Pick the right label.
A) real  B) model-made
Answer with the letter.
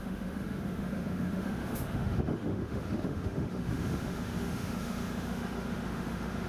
B